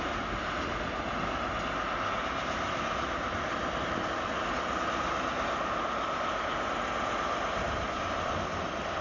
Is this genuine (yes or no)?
yes